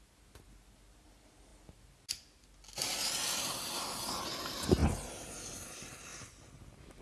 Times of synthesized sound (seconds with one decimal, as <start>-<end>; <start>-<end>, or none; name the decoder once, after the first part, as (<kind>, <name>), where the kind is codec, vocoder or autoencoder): 4.8-5.5 (vocoder, BigVGAN v2)